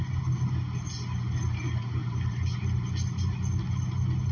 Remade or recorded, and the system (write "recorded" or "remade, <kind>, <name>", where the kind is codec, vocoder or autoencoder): recorded